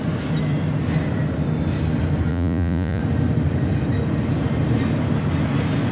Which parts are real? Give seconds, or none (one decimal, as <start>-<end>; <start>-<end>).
0.0-2.3; 3.0-5.9